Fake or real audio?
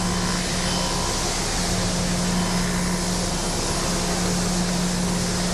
real